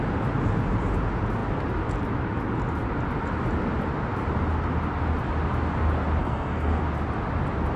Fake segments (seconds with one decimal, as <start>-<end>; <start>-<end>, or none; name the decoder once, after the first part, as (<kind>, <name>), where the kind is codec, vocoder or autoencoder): 6.2-6.8 (codec, SNAC)